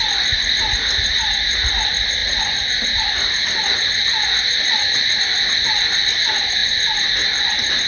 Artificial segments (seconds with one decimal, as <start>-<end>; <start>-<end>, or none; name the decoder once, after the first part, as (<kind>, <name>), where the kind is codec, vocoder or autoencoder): none